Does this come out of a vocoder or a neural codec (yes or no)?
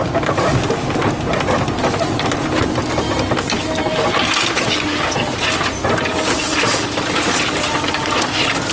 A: no